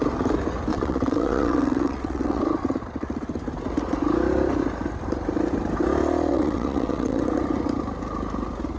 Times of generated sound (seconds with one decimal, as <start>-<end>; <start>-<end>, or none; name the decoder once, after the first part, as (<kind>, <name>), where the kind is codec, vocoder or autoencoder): 0.7-2.4 (vocoder, WaveNeXt); 6.3-7.2